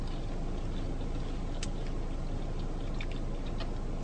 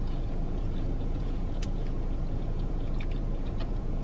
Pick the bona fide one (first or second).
first